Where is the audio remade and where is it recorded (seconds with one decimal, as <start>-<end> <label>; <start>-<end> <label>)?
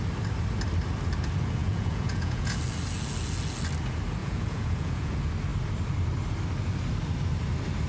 0.0-1.6 recorded; 1.6-2.6 remade; 2.6-4.2 recorded; 4.2-5.1 remade; 5.1-7.9 recorded